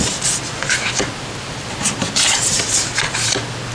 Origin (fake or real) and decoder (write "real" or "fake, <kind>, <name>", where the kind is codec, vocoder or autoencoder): real